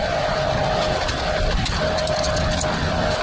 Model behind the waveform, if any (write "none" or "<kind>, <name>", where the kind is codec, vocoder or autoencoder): none